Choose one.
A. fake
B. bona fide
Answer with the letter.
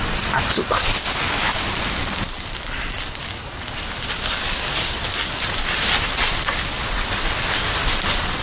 B